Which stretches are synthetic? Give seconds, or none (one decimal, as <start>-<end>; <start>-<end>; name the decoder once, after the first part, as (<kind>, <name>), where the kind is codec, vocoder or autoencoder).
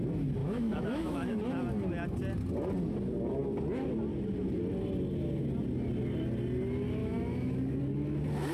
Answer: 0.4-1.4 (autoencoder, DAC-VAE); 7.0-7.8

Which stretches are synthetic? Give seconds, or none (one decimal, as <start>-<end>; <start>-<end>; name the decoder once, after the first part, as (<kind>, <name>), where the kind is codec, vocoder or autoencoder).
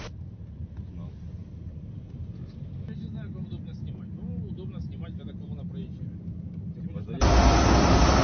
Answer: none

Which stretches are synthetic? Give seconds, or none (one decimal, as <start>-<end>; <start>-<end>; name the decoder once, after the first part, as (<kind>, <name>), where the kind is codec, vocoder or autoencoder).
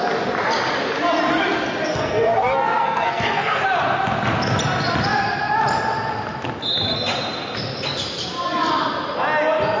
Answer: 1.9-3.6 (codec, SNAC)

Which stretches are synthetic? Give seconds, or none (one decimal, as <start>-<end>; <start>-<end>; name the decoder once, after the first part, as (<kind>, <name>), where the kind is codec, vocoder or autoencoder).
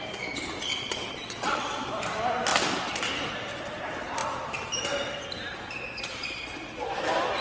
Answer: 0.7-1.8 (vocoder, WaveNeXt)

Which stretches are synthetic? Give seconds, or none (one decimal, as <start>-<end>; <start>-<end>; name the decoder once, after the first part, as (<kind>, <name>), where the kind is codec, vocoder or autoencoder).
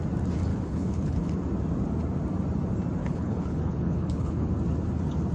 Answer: 0.5-1.3 (codec, HILCodec); 3.0-4.5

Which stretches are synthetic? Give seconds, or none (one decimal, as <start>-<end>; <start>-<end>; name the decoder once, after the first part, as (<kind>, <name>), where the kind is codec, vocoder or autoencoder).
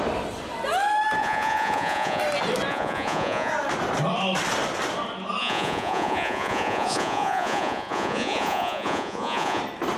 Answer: 1.2-2.2 (vocoder, Vocos); 2.7-3.5; 5.4-9.6